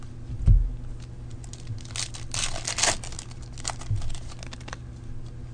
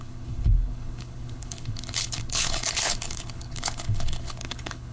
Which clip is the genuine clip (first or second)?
first